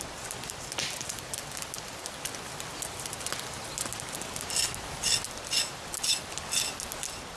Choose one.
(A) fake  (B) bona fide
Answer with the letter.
B